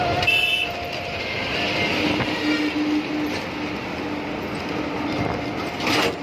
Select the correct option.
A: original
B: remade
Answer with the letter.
A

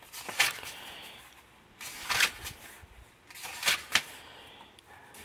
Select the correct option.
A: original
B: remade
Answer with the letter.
A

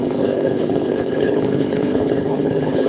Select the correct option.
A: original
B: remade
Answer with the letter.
B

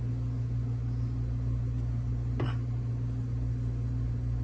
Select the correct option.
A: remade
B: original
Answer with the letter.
B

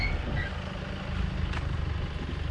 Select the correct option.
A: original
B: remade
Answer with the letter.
A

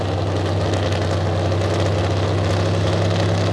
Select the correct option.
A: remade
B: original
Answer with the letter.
B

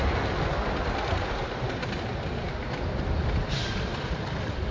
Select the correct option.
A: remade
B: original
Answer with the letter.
B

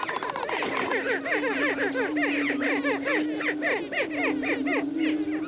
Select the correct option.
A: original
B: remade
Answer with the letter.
A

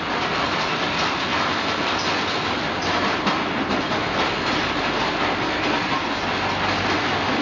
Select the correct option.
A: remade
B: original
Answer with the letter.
B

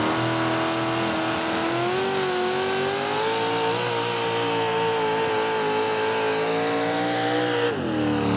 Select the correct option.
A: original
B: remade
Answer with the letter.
A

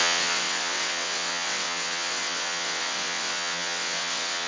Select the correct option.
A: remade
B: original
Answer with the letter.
A